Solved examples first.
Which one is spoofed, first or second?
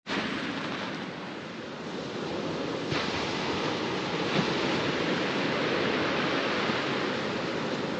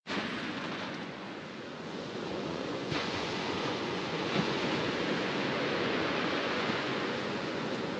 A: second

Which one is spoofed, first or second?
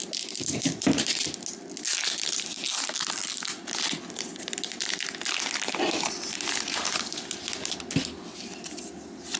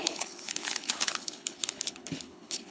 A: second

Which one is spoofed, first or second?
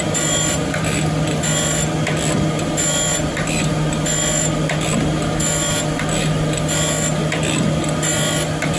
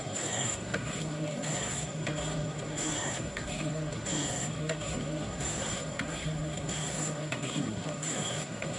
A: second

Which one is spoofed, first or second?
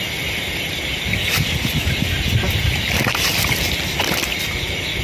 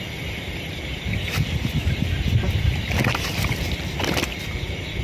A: second